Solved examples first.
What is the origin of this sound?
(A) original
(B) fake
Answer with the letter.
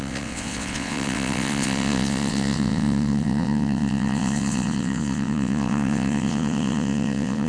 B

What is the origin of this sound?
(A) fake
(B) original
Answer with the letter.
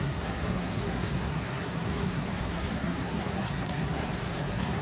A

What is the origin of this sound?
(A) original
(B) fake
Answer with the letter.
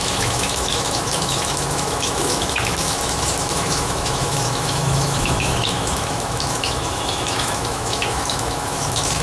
B